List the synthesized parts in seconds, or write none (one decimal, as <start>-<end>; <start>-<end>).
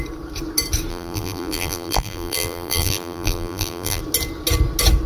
0.9-4.0